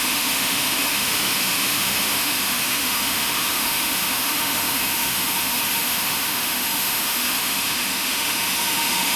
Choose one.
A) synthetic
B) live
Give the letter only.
A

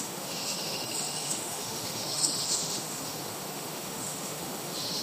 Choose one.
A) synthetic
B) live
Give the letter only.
A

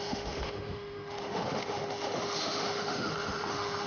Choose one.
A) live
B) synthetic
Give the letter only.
B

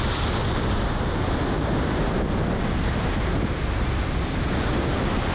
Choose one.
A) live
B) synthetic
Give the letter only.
A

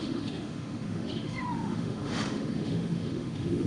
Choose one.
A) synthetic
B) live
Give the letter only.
A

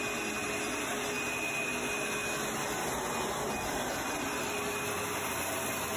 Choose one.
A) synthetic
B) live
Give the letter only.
B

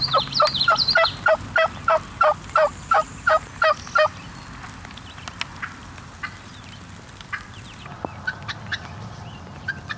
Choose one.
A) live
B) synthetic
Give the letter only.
A